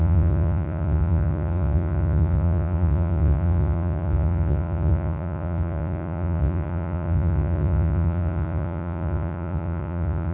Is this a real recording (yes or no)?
no